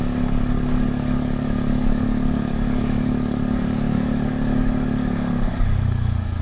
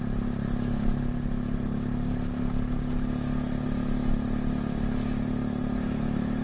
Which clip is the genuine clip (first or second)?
second